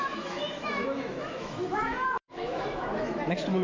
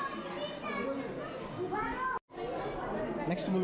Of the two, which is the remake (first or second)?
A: first